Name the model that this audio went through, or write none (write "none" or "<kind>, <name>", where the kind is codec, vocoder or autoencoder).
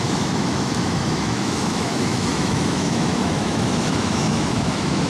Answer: autoencoder, DAC-VAE